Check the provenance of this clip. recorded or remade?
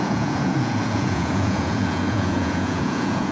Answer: remade